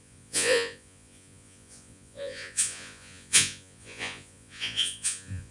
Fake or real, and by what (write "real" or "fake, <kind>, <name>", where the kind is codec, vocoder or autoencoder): fake, vocoder, Vocos